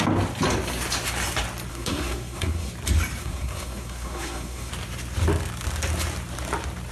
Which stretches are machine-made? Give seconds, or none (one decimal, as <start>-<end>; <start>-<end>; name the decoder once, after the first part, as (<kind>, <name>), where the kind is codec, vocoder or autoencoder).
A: 1.7-2.7 (codec, SNAC); 3.2-4.7